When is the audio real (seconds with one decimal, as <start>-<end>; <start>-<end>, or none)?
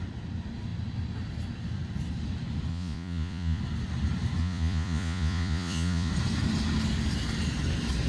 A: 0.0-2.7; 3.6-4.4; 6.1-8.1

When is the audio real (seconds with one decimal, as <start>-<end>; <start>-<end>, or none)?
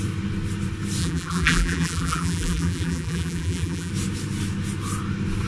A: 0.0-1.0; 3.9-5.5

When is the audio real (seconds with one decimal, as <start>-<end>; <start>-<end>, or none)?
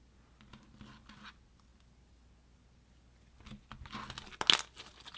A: 0.0-5.2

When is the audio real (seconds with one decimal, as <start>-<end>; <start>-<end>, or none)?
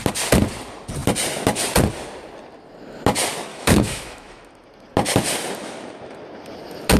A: 0.0-3.5; 4.4-7.0